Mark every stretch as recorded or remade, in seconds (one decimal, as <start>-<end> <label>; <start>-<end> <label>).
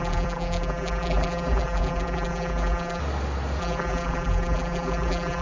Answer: 0.0-3.0 remade; 3.0-3.6 recorded; 3.6-5.4 remade